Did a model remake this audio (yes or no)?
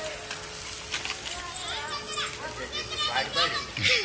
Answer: no